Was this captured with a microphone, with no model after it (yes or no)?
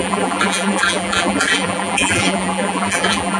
no